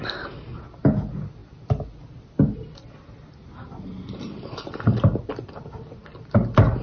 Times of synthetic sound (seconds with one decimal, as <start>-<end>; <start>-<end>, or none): none